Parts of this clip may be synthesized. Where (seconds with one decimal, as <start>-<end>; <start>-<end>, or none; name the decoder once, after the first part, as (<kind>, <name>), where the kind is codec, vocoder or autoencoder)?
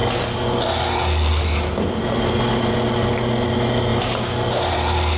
none